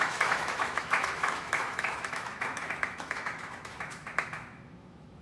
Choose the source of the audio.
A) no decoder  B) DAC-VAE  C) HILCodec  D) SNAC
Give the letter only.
B